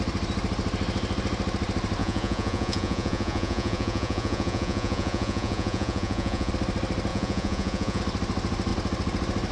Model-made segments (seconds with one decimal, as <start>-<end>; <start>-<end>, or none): 2.0-6.5; 7.1-8.0